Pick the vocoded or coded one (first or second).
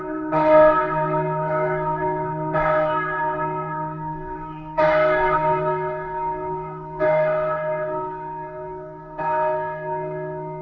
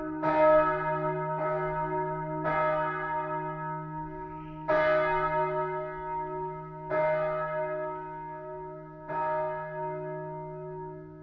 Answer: first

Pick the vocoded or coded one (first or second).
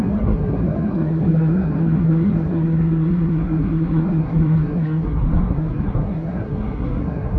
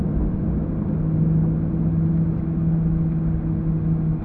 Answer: first